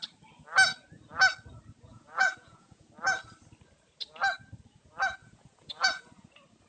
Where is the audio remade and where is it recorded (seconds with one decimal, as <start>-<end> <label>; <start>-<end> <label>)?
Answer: 0.0-1.9 recorded; 1.9-2.9 remade; 2.9-5.2 recorded; 5.2-6.1 remade; 6.1-6.7 recorded